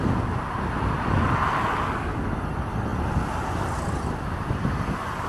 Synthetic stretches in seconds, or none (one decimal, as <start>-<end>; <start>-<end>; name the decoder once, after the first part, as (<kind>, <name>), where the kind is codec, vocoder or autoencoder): none